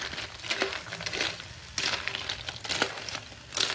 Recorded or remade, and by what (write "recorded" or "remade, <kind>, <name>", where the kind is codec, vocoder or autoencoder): recorded